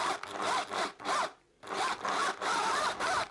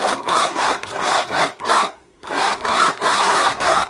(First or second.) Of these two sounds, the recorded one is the first